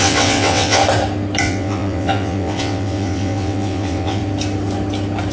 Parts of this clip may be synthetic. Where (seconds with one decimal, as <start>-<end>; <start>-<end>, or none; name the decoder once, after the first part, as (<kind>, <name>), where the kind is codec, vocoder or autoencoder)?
0.0-0.8 (vocoder, WaveNeXt); 1.4-4.2